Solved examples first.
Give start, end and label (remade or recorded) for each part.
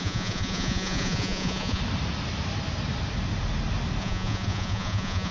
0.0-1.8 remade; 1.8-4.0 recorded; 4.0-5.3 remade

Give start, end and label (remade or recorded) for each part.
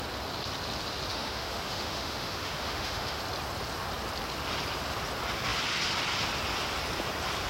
0.0-1.1 recorded; 1.1-3.2 remade; 3.2-7.5 recorded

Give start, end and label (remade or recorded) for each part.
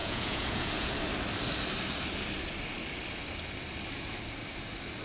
0.0-0.9 remade; 0.9-5.0 recorded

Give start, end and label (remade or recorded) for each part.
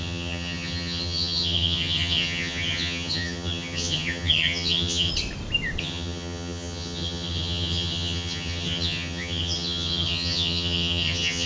0.0-5.1 remade; 5.1-5.8 recorded; 5.8-11.5 remade